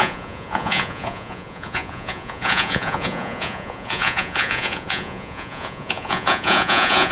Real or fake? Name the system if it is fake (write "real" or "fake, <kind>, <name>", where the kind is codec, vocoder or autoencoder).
fake, vocoder, Vocos